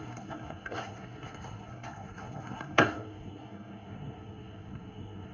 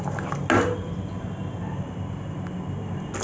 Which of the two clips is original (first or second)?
second